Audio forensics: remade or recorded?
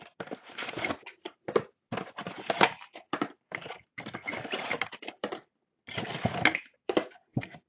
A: recorded